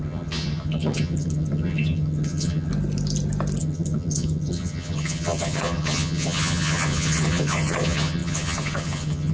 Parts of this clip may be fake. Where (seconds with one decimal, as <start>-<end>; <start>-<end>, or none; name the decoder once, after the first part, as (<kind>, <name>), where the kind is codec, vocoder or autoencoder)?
0.0-2.7 (vocoder, HiFi-GAN); 3.6-9.3